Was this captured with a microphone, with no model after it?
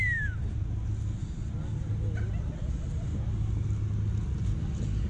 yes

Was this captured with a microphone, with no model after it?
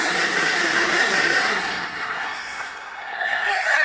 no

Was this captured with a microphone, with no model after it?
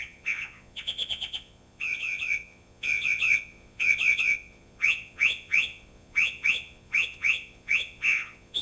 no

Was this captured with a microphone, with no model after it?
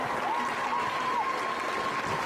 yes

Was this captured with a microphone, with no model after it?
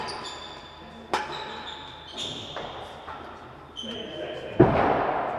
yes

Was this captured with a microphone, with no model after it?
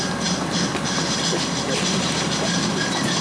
yes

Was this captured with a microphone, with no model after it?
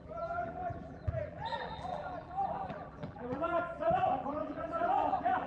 no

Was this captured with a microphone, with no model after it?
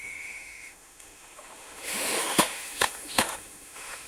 no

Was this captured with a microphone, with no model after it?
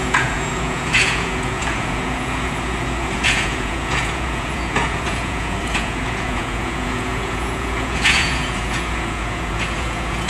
no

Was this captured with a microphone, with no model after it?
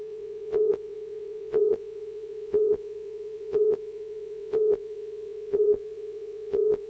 no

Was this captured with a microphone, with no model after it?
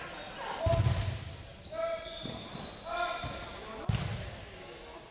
yes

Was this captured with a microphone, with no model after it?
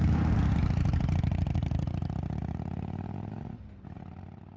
yes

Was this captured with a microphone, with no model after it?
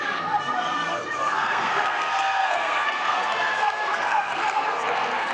no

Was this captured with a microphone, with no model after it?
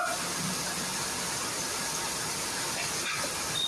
yes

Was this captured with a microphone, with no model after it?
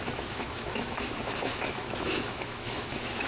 no